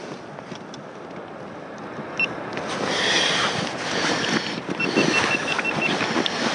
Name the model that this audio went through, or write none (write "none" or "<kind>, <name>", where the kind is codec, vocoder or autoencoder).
none